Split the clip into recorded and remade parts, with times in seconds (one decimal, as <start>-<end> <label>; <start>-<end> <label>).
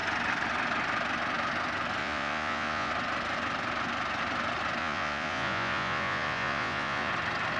0.0-2.0 recorded; 2.0-2.9 remade; 2.9-4.8 recorded; 4.8-7.1 remade; 7.1-7.6 recorded